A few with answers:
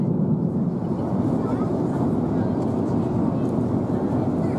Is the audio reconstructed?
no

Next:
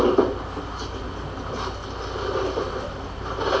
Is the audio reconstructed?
no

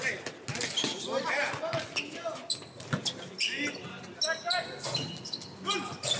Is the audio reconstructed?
no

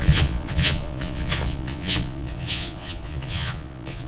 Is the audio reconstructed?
yes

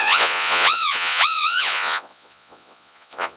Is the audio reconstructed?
yes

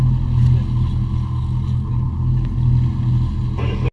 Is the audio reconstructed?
no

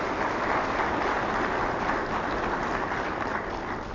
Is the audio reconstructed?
no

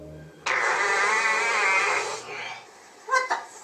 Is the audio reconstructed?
no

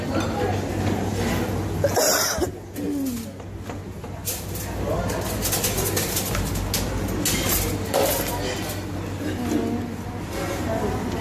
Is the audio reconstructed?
no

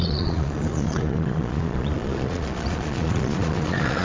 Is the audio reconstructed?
yes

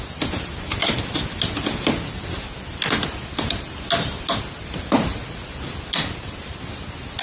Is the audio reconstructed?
no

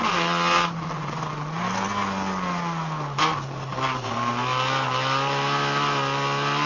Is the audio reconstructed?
no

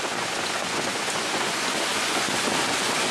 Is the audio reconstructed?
yes